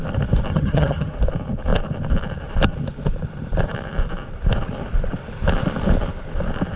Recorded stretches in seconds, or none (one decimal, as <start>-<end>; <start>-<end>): 0.0-0.5; 1.1-6.8